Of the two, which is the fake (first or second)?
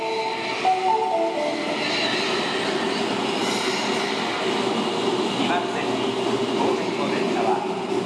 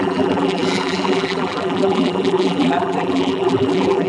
second